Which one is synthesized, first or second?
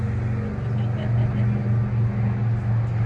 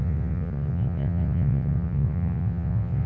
second